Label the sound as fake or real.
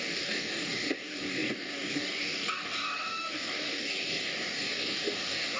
fake